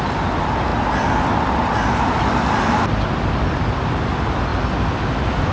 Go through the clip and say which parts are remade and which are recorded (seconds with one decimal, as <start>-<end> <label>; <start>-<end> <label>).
0.0-5.5 recorded

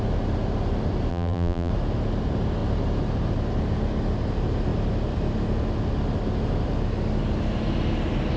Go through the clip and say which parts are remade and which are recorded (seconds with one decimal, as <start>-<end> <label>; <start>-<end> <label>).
0.0-1.1 recorded; 1.1-1.7 remade; 1.7-8.4 recorded

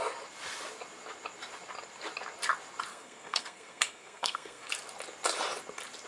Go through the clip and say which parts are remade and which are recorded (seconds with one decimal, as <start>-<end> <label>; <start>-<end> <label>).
0.0-2.9 recorded; 2.9-4.7 remade; 4.7-6.1 recorded

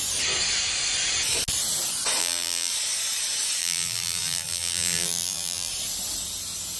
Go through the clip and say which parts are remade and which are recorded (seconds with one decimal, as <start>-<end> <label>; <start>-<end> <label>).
0.0-2.2 recorded; 2.2-2.7 remade; 2.7-3.6 recorded; 3.6-5.7 remade; 5.7-6.8 recorded

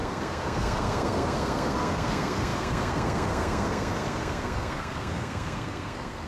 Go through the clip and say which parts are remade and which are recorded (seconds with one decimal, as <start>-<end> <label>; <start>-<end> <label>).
0.0-6.3 remade